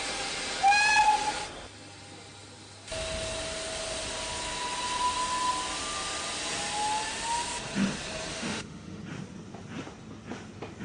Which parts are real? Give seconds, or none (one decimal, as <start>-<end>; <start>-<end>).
0.0-8.3; 9.0-10.8